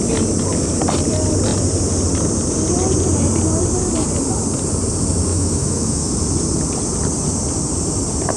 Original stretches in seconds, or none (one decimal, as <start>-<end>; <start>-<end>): 0.0-5.3; 6.1-8.4